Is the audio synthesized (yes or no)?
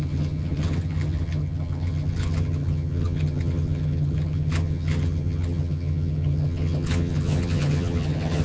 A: yes